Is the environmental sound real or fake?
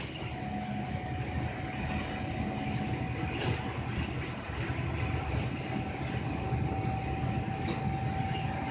real